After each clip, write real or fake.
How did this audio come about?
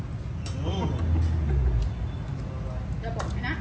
real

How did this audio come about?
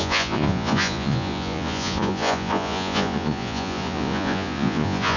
fake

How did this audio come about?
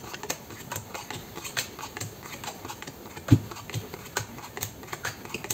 real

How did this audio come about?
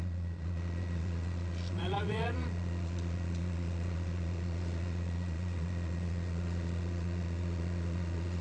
fake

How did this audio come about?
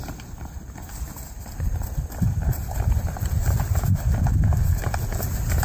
real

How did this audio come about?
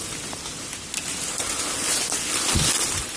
real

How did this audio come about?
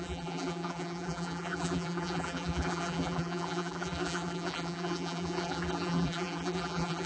fake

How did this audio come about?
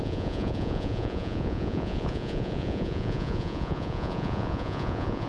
fake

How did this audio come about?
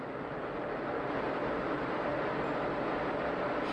real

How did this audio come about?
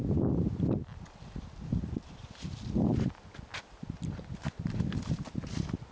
real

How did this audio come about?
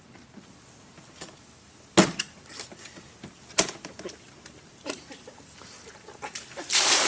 real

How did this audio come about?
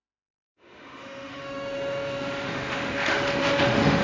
fake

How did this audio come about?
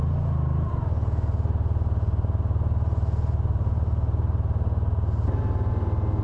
real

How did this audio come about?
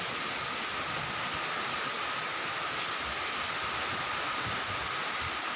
real